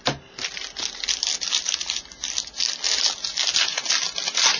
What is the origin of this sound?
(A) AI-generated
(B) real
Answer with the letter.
B